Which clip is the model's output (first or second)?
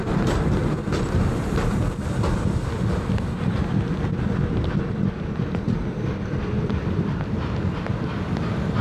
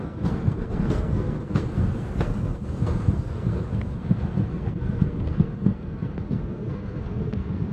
second